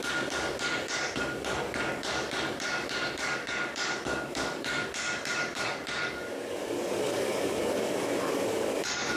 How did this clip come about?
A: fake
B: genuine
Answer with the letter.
A